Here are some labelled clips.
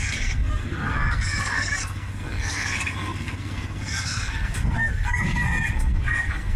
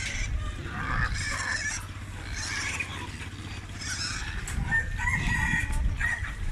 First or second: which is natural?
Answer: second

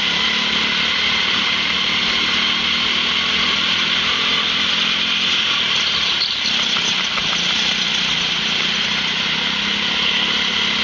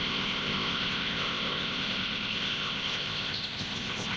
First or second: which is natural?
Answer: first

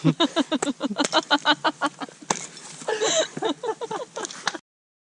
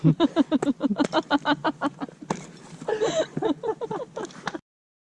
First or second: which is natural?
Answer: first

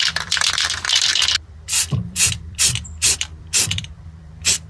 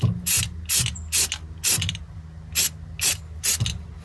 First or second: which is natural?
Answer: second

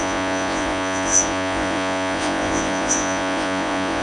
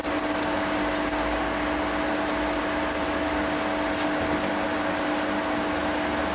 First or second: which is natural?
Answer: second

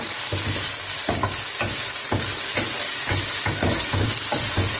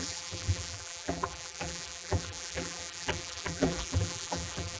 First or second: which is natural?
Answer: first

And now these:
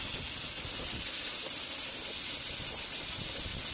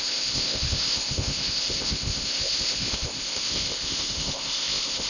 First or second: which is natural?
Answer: first